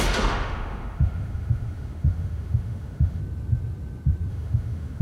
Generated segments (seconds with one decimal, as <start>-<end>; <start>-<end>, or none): 0.0-3.2; 4.3-5.0